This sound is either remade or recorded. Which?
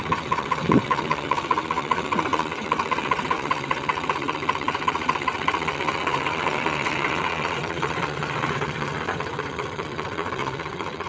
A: remade